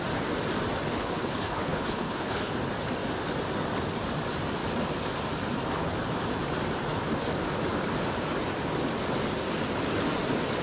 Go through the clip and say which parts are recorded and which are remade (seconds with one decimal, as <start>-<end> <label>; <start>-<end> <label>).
0.0-0.9 recorded; 0.9-2.5 remade; 2.5-10.6 recorded